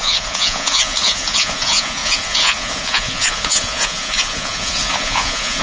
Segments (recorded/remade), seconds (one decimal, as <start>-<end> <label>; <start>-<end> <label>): 0.0-5.6 remade